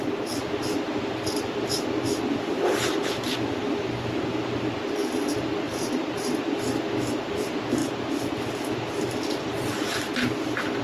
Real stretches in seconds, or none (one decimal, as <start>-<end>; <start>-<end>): 0.0-10.8